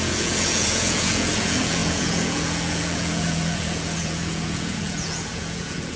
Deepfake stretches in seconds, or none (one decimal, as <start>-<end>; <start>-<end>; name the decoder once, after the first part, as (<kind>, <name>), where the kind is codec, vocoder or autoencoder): 0.0-6.0 (vocoder, Vocos)